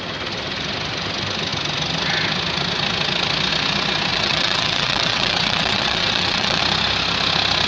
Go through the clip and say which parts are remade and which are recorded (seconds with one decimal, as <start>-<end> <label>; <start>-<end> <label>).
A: 0.0-4.1 recorded; 4.1-6.6 remade; 6.6-7.7 recorded